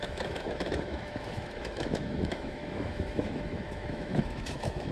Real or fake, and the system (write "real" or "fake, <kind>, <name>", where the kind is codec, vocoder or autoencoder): fake, autoencoder, DAC-VAE